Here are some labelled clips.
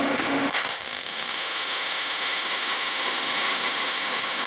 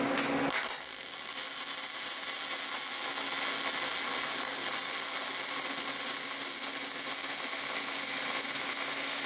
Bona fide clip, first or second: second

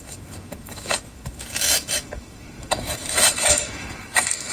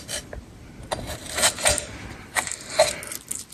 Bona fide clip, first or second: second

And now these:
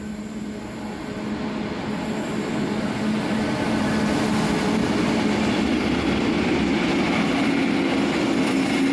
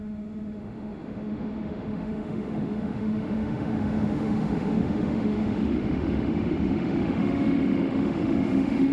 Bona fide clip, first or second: first